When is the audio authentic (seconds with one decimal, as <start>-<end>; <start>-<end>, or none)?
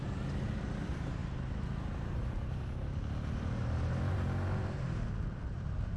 1.2-4.8